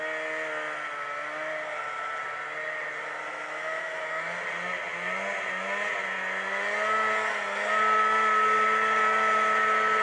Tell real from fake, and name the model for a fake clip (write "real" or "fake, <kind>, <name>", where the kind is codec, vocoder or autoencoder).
real